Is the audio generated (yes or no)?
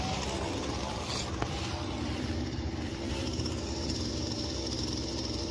no